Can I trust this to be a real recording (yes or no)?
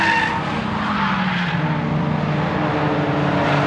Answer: yes